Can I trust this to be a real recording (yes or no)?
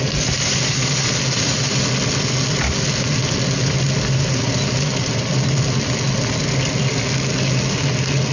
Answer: yes